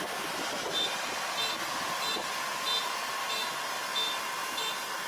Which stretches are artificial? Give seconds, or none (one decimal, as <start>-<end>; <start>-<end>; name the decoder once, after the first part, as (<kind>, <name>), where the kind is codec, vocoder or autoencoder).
none